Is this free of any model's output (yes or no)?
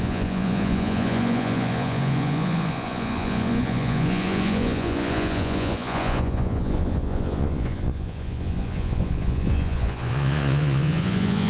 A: no